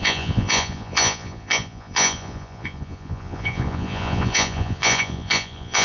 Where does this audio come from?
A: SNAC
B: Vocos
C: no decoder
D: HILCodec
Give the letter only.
B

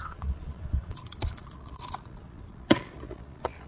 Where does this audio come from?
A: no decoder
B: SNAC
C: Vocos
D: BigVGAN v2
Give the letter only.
C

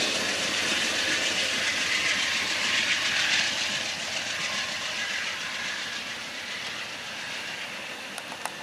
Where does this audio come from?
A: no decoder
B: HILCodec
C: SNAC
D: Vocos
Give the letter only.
A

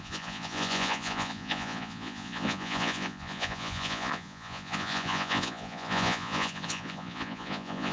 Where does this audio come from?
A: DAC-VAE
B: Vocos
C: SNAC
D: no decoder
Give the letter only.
B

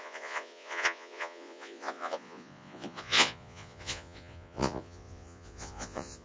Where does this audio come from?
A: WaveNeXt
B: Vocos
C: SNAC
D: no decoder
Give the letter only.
B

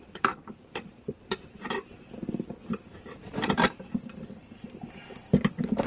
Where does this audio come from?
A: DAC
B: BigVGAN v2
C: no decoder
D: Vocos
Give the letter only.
C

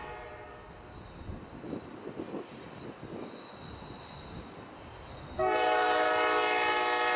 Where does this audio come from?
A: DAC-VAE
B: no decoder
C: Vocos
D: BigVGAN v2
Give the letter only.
B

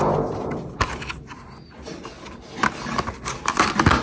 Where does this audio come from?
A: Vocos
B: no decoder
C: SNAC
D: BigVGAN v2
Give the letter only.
B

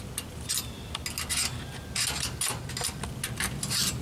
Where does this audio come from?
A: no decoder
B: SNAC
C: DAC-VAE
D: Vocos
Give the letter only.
A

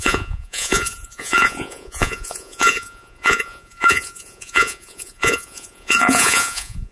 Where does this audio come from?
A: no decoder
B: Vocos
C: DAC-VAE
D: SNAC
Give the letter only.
B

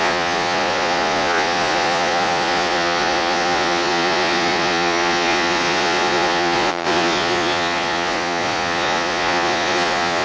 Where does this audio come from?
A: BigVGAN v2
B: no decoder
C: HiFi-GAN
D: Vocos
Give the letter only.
D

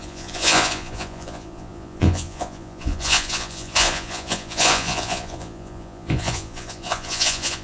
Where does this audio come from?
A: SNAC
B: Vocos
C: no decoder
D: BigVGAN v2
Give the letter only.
B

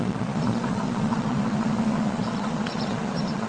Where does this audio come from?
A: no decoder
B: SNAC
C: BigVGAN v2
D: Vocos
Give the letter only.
D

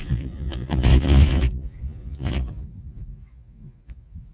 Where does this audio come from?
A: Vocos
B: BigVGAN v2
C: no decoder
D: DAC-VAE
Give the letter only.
A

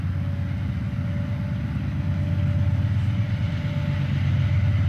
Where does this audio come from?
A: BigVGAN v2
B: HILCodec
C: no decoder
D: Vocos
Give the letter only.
C